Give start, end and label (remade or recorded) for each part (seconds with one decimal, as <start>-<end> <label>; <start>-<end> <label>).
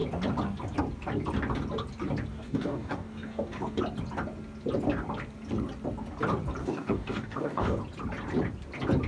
0.0-2.3 recorded; 2.3-3.8 remade; 3.8-6.6 recorded; 6.6-7.8 remade; 7.8-9.1 recorded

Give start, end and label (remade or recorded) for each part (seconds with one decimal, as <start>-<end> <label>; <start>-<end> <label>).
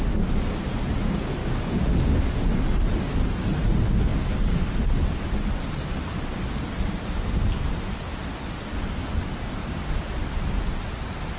0.0-1.4 recorded; 1.4-2.5 remade; 2.5-11.4 recorded